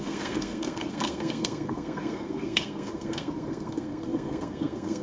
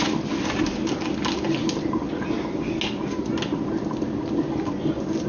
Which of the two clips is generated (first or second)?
first